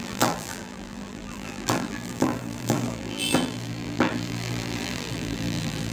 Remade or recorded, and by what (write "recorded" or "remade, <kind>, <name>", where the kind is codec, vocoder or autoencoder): remade, vocoder, BigVGAN v2